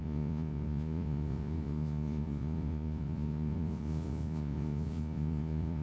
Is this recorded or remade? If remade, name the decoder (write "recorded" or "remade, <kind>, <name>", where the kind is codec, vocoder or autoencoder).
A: remade, vocoder, Vocos